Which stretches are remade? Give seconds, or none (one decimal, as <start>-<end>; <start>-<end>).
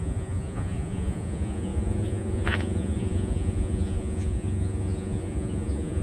0.0-6.0